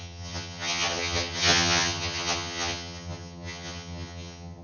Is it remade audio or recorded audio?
remade